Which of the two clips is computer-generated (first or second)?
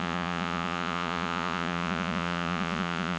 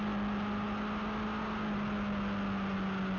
first